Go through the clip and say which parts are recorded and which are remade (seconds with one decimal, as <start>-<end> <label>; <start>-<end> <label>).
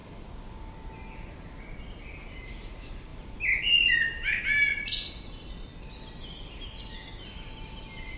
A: 0.0-8.2 recorded